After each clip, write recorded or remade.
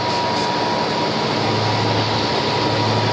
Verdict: recorded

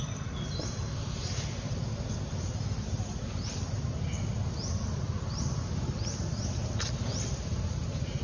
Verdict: recorded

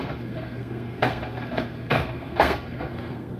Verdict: remade